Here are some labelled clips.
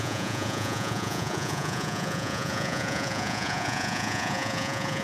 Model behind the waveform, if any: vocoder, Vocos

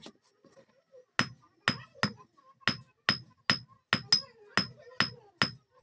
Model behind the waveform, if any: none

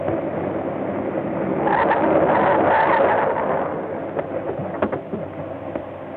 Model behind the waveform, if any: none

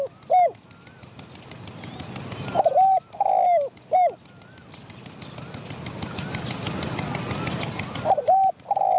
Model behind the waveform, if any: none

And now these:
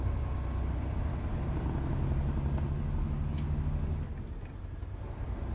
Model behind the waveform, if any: none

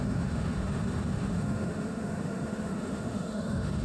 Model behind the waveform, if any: autoencoder, DAC-VAE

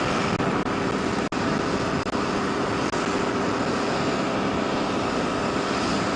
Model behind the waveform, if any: none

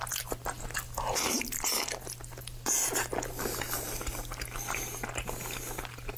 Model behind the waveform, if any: none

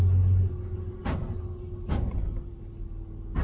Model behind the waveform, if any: none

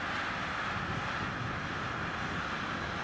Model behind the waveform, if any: none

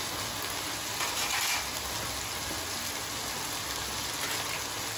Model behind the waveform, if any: none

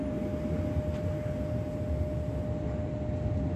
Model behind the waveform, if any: none